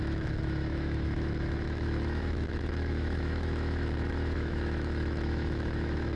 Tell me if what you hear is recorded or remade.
remade